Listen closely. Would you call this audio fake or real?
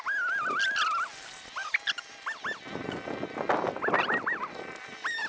real